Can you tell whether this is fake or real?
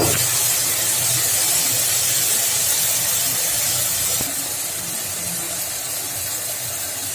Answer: real